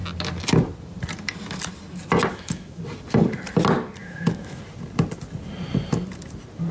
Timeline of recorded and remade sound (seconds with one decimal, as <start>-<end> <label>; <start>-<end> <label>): 0.0-2.3 recorded; 2.3-2.8 remade; 2.8-4.0 recorded; 4.0-4.6 remade; 4.6-6.7 recorded